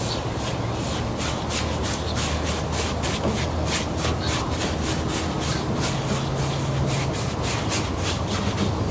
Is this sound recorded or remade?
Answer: recorded